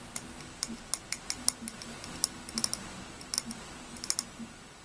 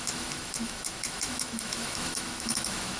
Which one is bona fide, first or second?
first